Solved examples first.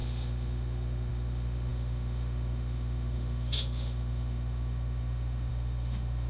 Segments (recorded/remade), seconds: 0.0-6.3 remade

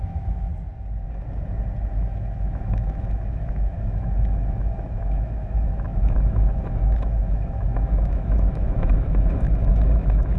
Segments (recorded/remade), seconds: 0.0-0.5 remade; 0.5-1.9 recorded; 1.9-10.4 remade

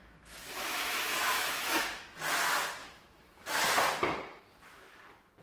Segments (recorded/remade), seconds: 0.0-2.2 remade; 2.2-2.8 recorded; 2.8-3.6 remade; 3.6-5.4 recorded

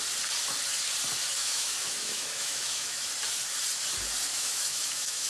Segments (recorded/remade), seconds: 0.0-1.4 recorded; 1.4-3.1 remade; 3.1-4.3 recorded; 4.3-5.3 remade